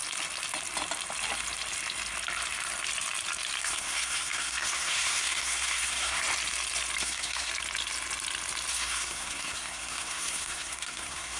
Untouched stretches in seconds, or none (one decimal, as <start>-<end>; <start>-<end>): 0.0-3.6; 6.2-7.0; 7.5-8.7